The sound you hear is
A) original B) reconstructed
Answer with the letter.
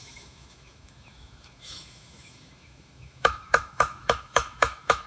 B